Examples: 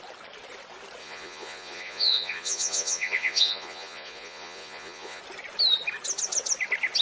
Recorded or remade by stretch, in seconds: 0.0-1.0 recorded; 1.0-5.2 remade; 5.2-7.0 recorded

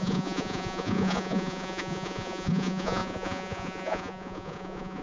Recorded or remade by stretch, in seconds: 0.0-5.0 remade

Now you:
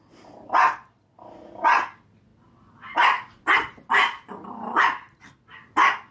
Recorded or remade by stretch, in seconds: 0.0-6.1 recorded

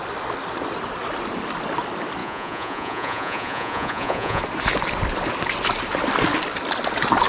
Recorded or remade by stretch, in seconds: 0.0-2.2 recorded; 2.2-4.4 remade; 4.4-7.3 recorded

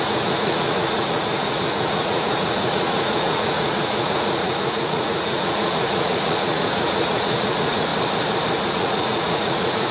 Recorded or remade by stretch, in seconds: 0.0-7.9 remade; 7.9-8.7 recorded; 8.7-9.9 remade

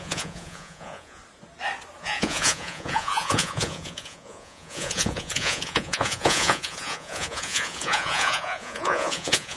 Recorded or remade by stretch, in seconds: 0.0-1.2 remade; 1.2-2.0 recorded; 2.0-9.6 remade

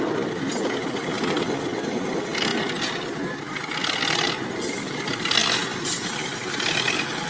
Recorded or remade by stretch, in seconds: 0.0-7.3 recorded

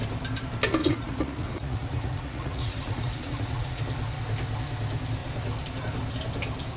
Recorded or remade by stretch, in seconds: 0.0-0.8 recorded; 0.8-3.8 remade; 3.8-6.8 recorded